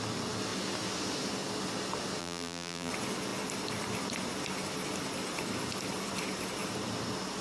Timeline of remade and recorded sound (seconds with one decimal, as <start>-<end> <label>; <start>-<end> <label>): 0.0-2.2 recorded; 2.2-2.9 remade; 2.9-7.4 recorded